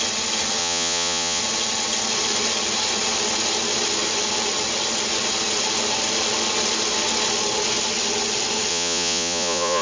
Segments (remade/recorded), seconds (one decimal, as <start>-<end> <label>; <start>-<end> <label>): 0.0-0.6 recorded; 0.6-1.4 remade; 1.4-8.7 recorded; 8.7-9.8 remade